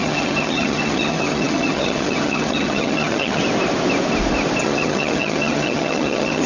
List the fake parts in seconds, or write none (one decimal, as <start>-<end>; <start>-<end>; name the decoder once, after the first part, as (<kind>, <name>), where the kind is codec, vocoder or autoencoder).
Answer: 0.0-3.4 (vocoder, HiFi-GAN); 4.6-6.5